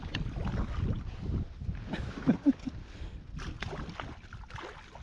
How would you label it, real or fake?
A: real